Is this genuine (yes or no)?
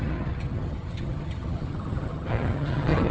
no